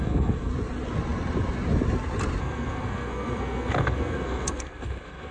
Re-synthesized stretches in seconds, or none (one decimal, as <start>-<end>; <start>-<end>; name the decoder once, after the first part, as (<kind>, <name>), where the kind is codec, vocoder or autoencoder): 0.0-0.5 (codec, SNAC); 2.4-5.3